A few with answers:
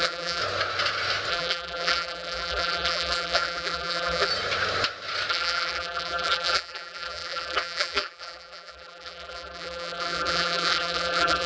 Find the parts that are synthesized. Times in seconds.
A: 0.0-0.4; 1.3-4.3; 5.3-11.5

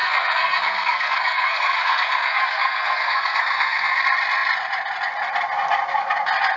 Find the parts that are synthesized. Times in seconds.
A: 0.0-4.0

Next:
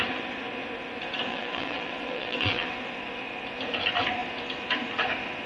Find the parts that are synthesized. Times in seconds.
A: 1.3-2.7

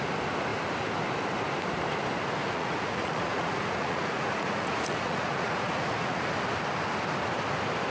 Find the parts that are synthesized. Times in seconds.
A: 2.4-6.3